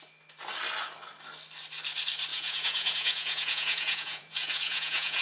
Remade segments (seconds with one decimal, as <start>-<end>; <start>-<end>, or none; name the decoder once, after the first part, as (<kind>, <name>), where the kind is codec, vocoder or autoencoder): 2.3-5.2 (vocoder, Vocos)